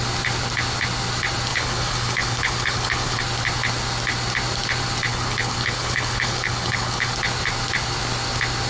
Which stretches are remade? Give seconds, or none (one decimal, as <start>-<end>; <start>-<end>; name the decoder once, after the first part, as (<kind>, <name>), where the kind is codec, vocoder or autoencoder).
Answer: 1.5-3.2 (codec, HILCodec); 5.1-7.1